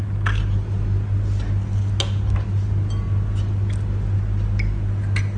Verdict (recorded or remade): recorded